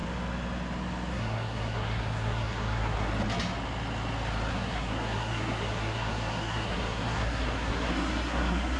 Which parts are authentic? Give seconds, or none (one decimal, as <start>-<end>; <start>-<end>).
0.0-1.1; 3.1-4.5

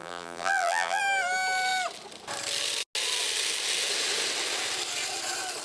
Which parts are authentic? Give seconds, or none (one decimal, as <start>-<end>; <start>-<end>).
1.0-5.6

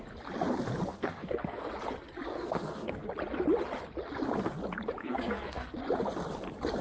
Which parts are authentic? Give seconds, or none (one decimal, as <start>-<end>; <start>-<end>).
0.0-0.9; 1.6-2.3; 3.1-5.0; 5.8-6.8

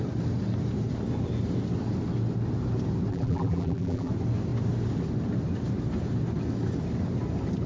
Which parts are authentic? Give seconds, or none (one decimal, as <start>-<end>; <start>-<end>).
0.0-3.1; 4.1-7.7